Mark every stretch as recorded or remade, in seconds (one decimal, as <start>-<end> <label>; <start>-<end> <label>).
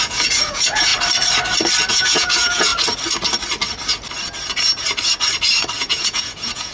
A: 0.0-0.9 remade; 0.9-1.9 recorded; 1.9-2.7 remade; 2.7-5.8 recorded; 5.8-6.7 remade